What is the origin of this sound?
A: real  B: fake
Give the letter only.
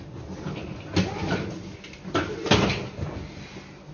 A